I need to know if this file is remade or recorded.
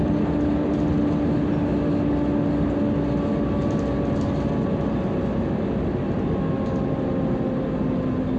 recorded